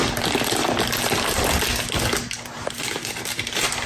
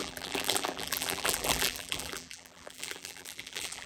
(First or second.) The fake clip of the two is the second